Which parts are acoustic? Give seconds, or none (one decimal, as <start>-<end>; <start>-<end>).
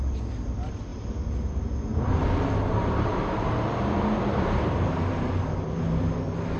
0.0-1.9; 5.3-6.6